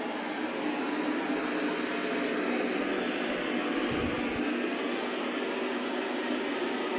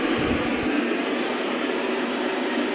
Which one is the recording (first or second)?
first